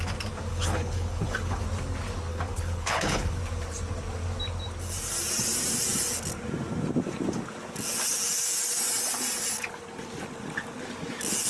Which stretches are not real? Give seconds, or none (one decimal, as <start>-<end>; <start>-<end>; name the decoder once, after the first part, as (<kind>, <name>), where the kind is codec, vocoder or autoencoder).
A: 0.5-1.6 (codec, HILCodec); 2.3-3.4